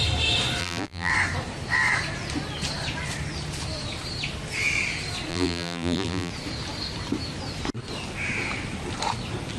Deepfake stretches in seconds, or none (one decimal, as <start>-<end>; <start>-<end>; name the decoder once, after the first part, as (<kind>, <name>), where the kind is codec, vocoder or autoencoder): 0.6-1.1 (vocoder, BigVGAN v2); 5.3-6.3

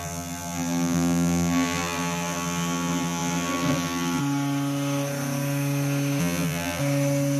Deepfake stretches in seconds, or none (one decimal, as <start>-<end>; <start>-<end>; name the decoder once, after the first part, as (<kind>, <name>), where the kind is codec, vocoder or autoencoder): 0.0-4.2 (vocoder, BigVGAN v2); 6.2-6.8

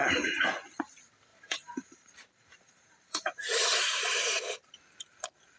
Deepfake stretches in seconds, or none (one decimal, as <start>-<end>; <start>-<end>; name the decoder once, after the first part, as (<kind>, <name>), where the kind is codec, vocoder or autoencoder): 1.3-4.7 (vocoder, BigVGAN v2)

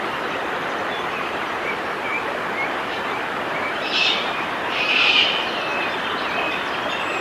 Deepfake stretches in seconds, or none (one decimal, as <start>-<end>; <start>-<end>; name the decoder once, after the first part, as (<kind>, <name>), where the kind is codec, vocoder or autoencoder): 0.0-5.7 (vocoder, BigVGAN v2); 6.2-7.2

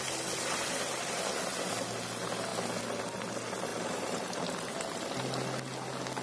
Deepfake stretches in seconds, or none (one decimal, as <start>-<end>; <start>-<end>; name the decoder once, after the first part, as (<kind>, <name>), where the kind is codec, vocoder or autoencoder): 0.4-1.1 (vocoder, BigVGAN v2); 3.7-5.2

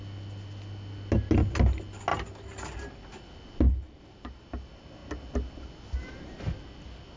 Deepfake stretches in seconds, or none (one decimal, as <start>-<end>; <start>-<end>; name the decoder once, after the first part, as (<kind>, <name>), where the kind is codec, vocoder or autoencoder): none

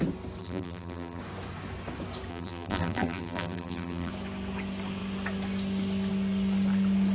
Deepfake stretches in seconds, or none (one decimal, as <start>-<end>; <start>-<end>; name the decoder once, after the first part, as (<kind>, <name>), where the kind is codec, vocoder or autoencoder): 0.4-1.2 (vocoder, BigVGAN v2); 2.3-4.1

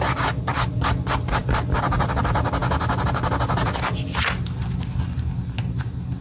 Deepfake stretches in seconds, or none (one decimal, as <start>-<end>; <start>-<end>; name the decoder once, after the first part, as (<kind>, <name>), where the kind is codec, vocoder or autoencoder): none